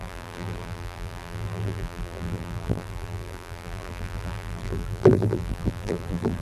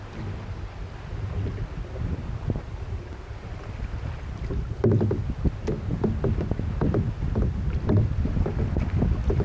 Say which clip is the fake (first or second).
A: first